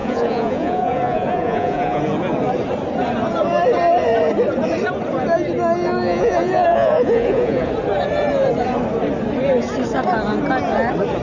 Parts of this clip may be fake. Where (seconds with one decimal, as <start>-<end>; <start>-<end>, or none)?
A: 0.0-2.0; 6.1-7.7